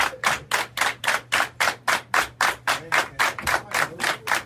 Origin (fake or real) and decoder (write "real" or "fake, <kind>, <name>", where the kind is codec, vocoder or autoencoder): real